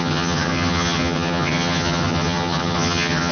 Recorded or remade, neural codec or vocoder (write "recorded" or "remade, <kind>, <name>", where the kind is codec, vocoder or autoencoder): remade, vocoder, HiFi-GAN